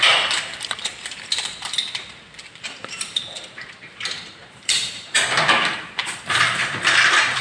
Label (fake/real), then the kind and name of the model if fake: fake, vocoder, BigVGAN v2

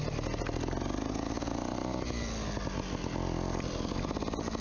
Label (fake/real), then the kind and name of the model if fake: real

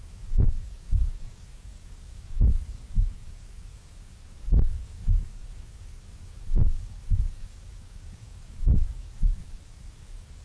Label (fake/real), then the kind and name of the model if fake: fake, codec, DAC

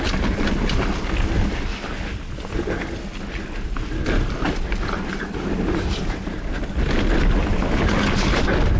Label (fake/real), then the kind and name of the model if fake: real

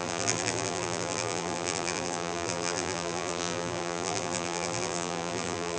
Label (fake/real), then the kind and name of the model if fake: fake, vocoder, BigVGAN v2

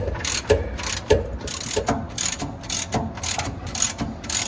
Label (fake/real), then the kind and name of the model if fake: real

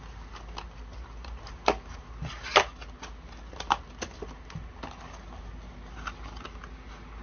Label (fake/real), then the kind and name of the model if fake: real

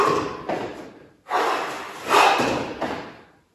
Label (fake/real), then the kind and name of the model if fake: real